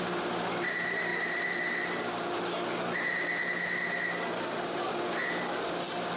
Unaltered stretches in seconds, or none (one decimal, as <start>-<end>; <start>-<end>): 0.0-6.2